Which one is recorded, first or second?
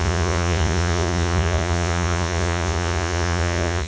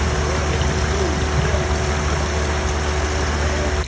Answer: second